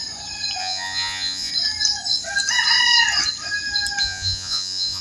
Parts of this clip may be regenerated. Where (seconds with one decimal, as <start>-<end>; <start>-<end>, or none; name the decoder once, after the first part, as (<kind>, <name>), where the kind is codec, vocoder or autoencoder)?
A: 0.6-1.5 (vocoder, Vocos); 4.0-5.0